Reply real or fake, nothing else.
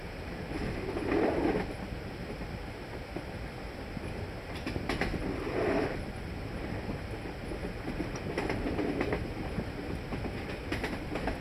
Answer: real